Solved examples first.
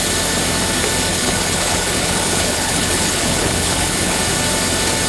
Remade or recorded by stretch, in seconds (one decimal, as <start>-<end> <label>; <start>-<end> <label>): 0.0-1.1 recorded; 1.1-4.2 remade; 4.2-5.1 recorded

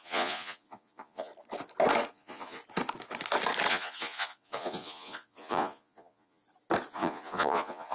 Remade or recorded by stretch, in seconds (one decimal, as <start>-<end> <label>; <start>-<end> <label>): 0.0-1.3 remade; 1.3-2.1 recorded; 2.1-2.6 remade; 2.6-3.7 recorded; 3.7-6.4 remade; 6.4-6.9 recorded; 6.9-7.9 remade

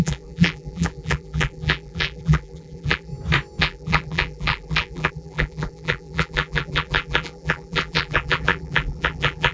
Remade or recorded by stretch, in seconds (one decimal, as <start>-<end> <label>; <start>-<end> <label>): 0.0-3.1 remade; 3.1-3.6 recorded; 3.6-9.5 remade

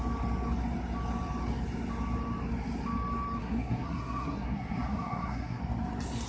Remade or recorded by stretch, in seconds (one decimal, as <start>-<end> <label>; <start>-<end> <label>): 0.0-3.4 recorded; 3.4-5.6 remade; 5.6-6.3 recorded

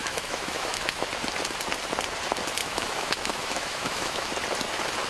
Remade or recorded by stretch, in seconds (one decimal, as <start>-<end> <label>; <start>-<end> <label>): 0.0-1.1 remade; 1.1-2.6 recorded; 2.6-4.3 remade; 4.3-5.1 recorded

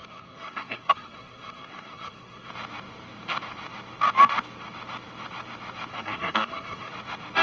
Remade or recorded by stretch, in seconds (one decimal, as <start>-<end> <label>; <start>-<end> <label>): 0.0-2.5 remade; 2.5-5.9 recorded; 5.9-6.9 remade; 6.9-7.4 recorded

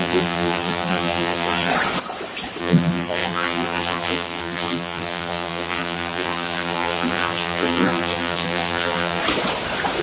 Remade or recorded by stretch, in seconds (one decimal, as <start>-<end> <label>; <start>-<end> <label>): 0.0-1.7 remade; 1.7-2.6 recorded; 2.6-9.2 remade; 9.2-10.0 recorded